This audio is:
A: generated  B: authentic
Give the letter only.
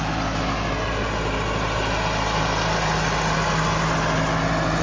B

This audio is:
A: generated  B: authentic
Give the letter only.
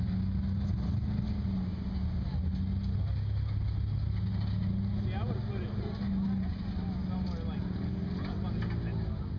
B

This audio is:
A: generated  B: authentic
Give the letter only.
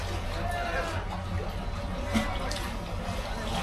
B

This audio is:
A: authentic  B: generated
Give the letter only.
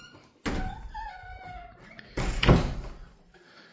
A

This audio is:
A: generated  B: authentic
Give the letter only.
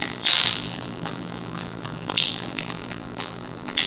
A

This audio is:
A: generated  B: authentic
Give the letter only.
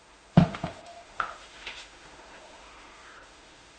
A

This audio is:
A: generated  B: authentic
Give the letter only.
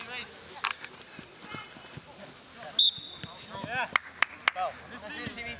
B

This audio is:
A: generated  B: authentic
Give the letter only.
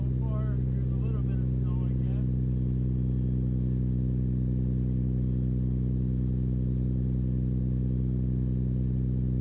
B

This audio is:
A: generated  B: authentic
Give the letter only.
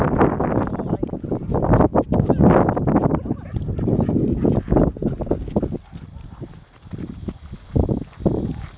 B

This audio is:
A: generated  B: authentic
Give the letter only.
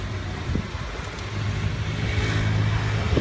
B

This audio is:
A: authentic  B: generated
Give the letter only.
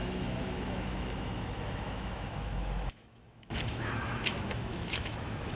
B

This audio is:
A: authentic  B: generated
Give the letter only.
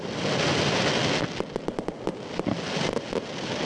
A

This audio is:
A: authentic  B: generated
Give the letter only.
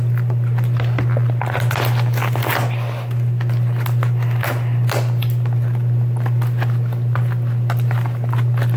A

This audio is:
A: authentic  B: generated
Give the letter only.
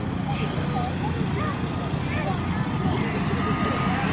A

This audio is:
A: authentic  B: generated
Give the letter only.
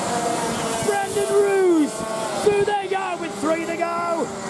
A